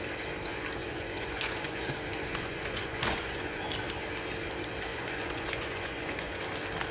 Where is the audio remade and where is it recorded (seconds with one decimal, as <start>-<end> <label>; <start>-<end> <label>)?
0.0-0.8 recorded; 0.8-1.9 remade; 1.9-2.3 recorded; 2.3-3.6 remade; 3.6-4.9 recorded; 4.9-6.4 remade; 6.4-6.9 recorded